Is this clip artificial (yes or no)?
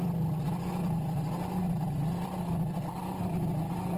no